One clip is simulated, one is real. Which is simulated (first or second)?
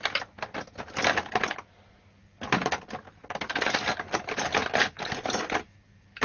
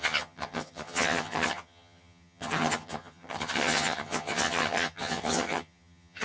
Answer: second